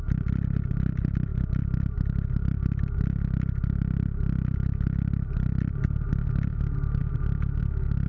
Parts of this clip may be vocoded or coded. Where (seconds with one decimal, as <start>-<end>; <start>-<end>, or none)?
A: none